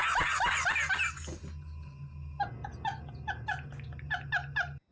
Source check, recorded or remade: recorded